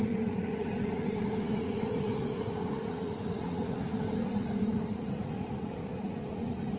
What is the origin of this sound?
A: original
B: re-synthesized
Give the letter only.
B